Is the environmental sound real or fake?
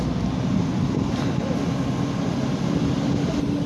real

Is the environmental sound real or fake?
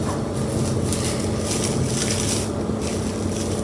real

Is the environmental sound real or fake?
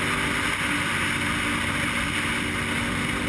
real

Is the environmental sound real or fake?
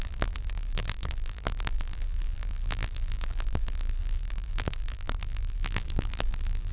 fake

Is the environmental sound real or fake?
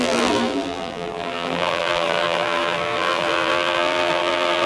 fake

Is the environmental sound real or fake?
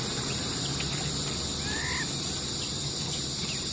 real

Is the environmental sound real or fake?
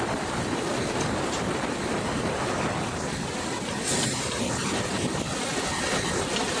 real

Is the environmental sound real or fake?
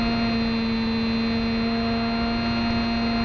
real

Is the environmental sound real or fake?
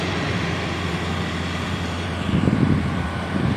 fake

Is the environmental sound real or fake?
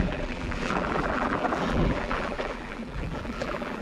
fake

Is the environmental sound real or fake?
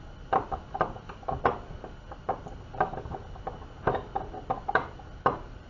real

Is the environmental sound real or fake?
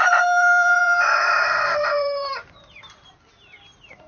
fake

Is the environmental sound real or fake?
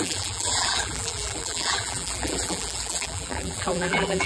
fake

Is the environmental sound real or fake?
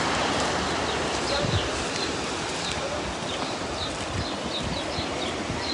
real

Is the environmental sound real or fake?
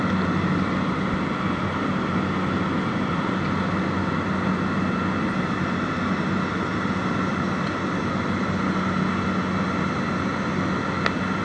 real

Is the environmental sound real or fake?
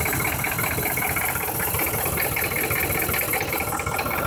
real